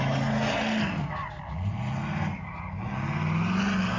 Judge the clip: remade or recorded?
recorded